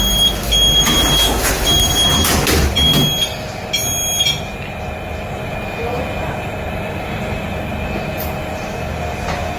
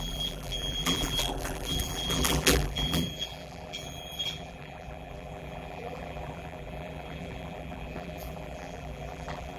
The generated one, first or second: second